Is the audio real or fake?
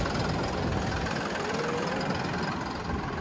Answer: real